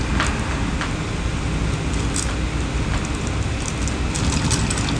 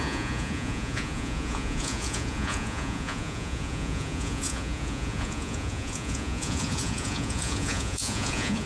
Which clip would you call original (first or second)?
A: first